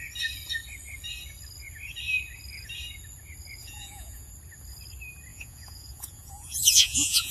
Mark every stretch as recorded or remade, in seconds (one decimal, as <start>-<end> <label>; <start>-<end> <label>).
0.0-3.6 recorded; 3.6-4.3 remade; 4.3-5.3 recorded; 5.3-7.3 remade